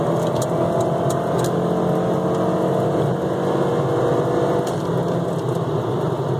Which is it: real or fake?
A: real